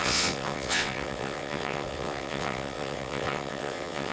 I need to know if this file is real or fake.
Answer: fake